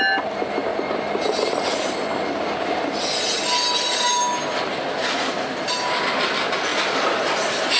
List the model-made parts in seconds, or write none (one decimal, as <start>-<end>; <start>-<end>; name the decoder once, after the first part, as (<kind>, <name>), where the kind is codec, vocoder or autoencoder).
none